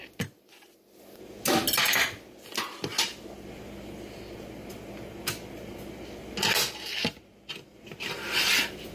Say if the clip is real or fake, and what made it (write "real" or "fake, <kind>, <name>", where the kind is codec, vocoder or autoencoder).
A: real